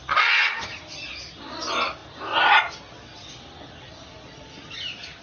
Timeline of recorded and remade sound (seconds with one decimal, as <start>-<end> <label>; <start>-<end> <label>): 0.0-5.2 recorded